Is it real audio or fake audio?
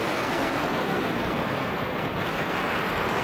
fake